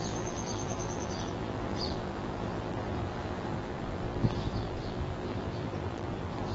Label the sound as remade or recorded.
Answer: remade